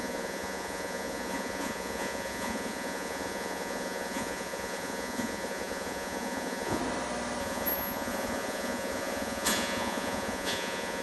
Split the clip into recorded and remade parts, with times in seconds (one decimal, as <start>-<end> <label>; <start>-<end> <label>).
0.0-6.8 remade; 6.8-7.4 recorded; 7.4-11.0 remade